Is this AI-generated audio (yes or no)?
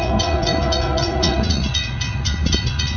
yes